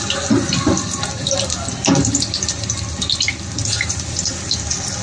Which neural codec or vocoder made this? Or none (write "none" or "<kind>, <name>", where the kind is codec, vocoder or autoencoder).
none